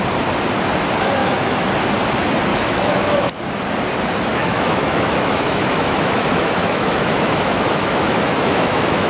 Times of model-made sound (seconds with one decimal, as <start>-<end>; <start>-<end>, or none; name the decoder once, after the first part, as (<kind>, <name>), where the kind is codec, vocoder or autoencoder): 1.2-1.7 (autoencoder, DAC-VAE); 2.5-3.4; 4.3-9.1